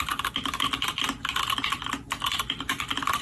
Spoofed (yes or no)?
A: no